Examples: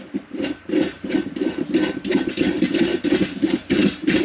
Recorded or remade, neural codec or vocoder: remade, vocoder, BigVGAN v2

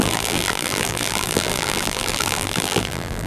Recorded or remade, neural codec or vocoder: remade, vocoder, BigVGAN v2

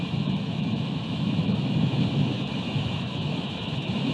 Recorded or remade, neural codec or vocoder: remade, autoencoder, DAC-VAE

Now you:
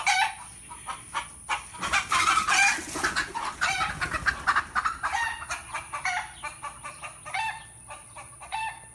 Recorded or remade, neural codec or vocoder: recorded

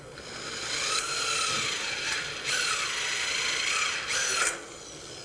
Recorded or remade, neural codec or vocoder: recorded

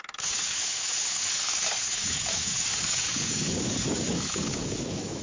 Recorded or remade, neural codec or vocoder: remade, codec, DAC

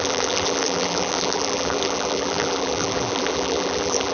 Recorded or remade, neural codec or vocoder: remade, vocoder, BigVGAN v2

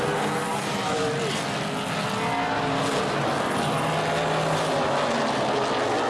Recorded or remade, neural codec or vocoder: recorded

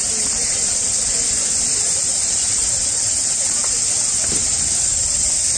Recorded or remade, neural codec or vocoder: remade, vocoder, BigVGAN v2